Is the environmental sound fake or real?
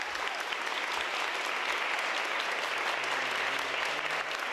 real